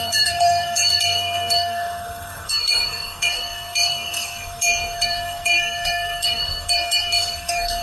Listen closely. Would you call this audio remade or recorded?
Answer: remade